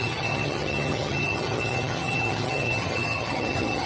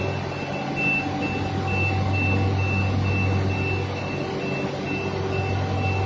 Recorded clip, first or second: second